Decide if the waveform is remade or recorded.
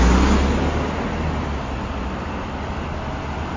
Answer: recorded